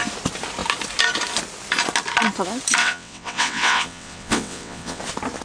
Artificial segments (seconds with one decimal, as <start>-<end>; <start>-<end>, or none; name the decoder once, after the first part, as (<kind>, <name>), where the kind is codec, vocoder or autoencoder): 2.8-5.0 (vocoder, WaveNeXt)